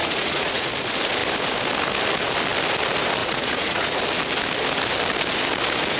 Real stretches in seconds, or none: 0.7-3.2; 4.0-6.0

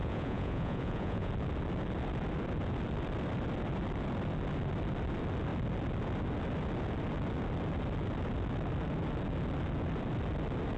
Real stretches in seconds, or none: 1.3-10.8

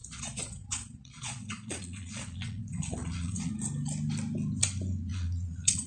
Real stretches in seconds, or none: 3.5-5.1